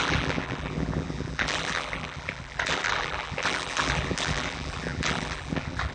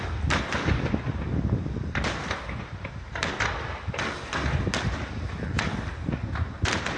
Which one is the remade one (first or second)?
first